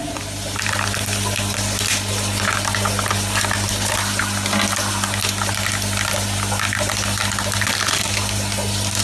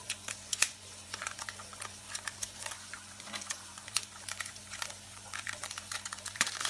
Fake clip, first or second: second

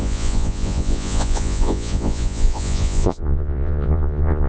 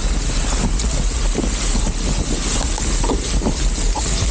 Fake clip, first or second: first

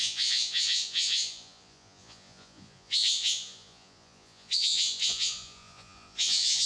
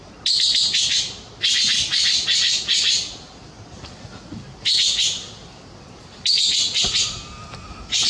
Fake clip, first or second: first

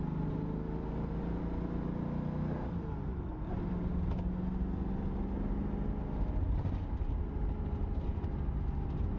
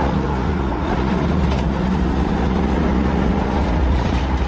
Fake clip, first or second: second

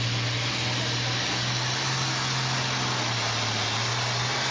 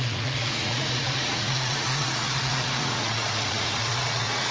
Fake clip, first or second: second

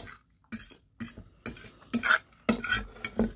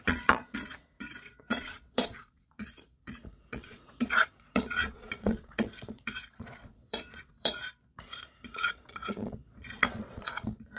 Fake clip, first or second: second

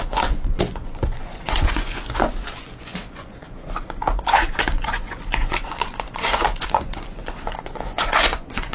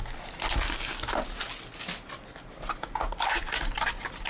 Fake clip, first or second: first